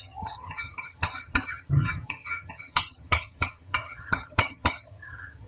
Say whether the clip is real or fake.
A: fake